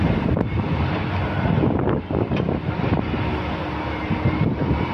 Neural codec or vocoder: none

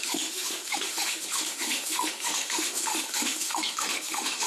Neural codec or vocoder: autoencoder, DAC-VAE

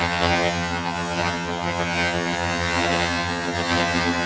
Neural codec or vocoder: vocoder, HiFi-GAN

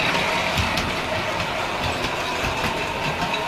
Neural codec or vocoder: none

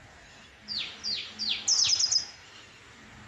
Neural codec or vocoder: none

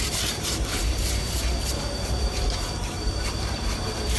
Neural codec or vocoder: vocoder, BigVGAN v2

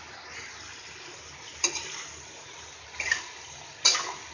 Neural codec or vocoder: none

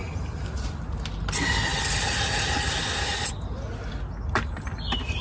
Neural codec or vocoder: none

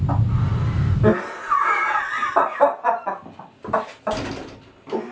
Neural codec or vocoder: none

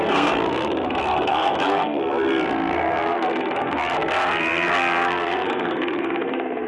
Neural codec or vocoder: codec, SNAC